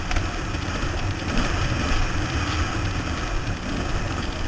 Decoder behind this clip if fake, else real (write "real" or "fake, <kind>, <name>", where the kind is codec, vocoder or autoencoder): real